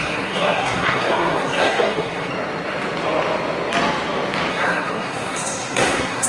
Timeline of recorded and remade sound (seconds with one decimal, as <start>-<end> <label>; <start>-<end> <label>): 0.0-2.3 remade; 2.3-4.5 recorded; 4.5-6.3 remade